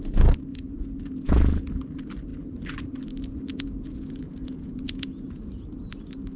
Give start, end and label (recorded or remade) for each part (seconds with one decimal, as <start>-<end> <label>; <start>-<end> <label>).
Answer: 0.0-0.5 recorded; 0.5-1.7 remade; 1.7-3.5 recorded; 3.5-5.5 remade; 5.5-6.4 recorded

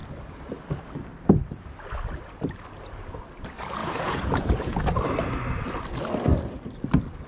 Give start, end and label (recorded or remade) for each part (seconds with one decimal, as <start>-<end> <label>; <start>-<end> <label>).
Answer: 0.0-3.8 recorded; 3.8-4.7 remade; 4.7-7.3 recorded

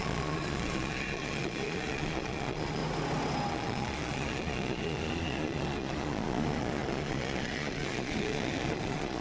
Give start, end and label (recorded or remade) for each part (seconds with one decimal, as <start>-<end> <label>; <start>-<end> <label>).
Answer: 0.0-2.8 remade; 2.8-3.5 recorded; 3.5-9.2 remade

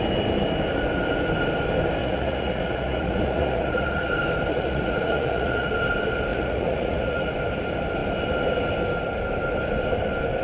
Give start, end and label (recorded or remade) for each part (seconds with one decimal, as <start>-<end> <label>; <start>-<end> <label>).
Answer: 0.0-2.0 recorded; 2.0-4.1 remade; 4.1-4.5 recorded; 4.5-5.7 remade; 5.7-6.3 recorded; 6.3-7.3 remade; 7.3-10.4 recorded

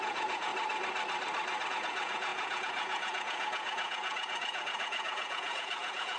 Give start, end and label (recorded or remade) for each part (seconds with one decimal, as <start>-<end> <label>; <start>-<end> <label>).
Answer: 0.0-0.5 remade; 0.5-1.7 recorded; 1.7-6.2 remade

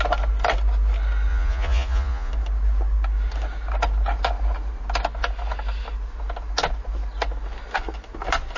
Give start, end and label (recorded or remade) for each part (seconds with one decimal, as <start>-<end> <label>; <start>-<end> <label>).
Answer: 0.0-1.3 recorded; 1.3-2.3 remade; 2.3-8.6 recorded

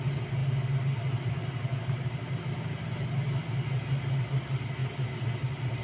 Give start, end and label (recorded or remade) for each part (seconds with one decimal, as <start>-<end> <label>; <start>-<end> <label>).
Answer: 0.0-5.8 recorded

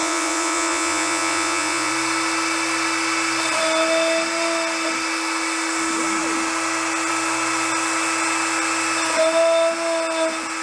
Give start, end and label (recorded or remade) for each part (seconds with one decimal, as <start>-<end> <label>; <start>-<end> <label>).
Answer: 0.0-1.9 remade; 1.9-10.6 recorded